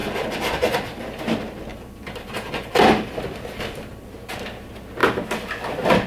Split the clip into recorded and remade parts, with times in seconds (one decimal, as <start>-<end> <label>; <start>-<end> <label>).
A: 0.0-1.2 remade; 1.2-1.7 recorded; 1.7-4.1 remade; 4.1-6.1 recorded